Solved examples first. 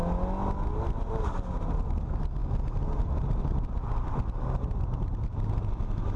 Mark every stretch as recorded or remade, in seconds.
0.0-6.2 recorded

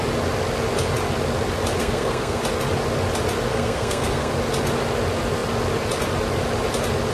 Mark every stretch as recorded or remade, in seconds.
0.0-1.8 recorded; 1.8-2.4 remade; 2.4-3.5 recorded; 3.5-4.3 remade; 4.3-7.1 recorded

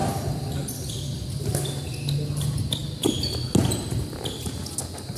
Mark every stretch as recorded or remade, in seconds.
0.0-5.2 recorded

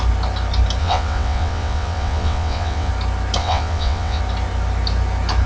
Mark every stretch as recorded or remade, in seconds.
0.0-0.8 recorded; 0.8-2.9 remade; 2.9-3.4 recorded; 3.4-4.2 remade; 4.2-5.5 recorded

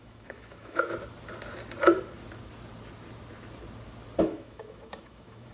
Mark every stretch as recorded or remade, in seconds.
0.0-0.9 remade; 0.9-4.2 recorded; 4.2-5.5 remade